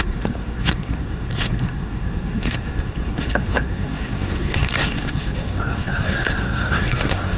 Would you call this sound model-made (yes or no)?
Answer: yes